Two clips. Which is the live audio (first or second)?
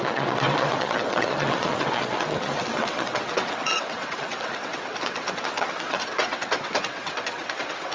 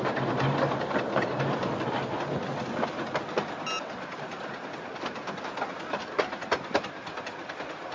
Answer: second